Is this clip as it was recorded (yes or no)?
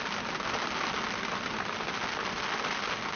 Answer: yes